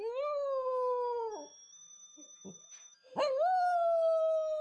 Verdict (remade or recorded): remade